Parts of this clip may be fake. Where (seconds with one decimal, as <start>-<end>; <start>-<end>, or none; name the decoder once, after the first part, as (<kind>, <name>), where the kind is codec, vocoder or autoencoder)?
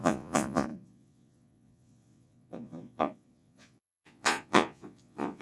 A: 0.0-5.4 (vocoder, Vocos)